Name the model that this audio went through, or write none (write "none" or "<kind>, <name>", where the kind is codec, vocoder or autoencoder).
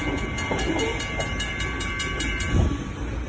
none